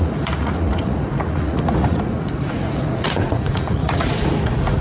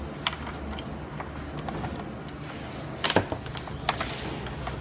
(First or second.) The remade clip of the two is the first